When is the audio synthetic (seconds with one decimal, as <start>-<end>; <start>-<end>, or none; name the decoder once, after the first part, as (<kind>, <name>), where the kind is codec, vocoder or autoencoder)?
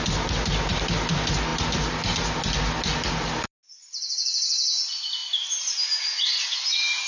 none